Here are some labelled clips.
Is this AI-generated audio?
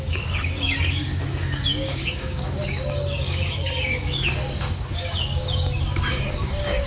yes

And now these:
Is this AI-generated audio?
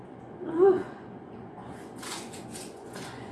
yes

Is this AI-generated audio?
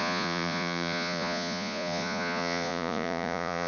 yes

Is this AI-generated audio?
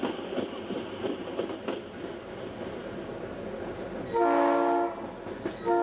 no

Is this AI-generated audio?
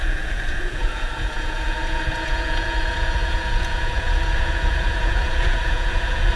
yes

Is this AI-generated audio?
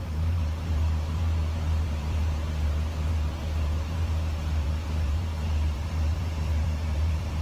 yes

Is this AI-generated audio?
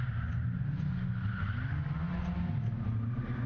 no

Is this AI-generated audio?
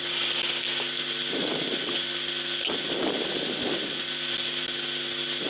no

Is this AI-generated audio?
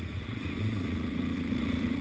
yes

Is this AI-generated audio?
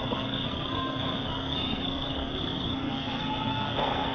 yes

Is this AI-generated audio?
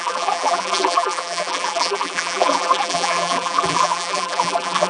yes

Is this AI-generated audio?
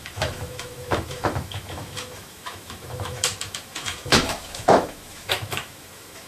yes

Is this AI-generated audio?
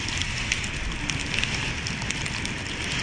no